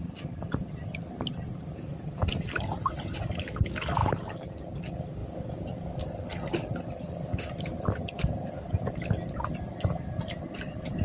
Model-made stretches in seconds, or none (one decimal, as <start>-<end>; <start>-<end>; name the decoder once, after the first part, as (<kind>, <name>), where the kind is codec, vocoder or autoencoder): none